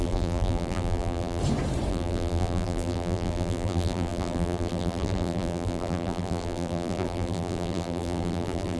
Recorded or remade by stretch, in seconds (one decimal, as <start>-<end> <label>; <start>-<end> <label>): 0.0-1.4 remade; 1.4-1.9 recorded; 1.9-8.8 remade